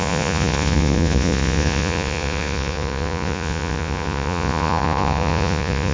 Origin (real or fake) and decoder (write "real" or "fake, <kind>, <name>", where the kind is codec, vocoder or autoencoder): fake, vocoder, Vocos